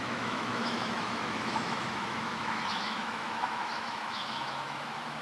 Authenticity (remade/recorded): remade